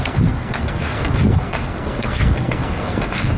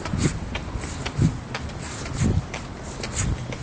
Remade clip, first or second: first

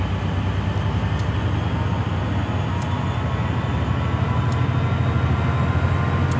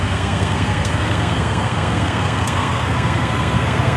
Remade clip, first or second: second